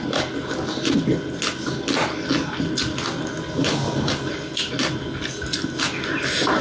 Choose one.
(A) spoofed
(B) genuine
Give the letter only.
B